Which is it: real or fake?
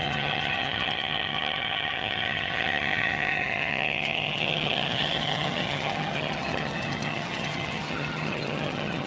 fake